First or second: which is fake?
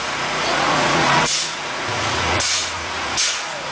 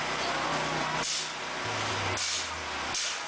first